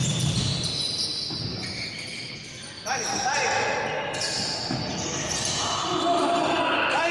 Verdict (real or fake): real